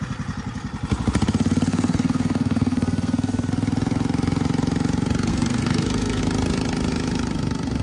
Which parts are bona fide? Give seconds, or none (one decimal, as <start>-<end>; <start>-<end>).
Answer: 0.0-1.7; 3.5-5.3; 6.2-7.8